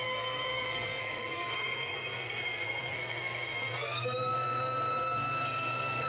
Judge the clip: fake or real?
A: fake